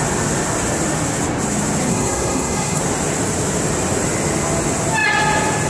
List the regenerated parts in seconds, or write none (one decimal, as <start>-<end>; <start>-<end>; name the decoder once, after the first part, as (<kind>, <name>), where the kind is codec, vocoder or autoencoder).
1.9-2.8 (codec, SNAC)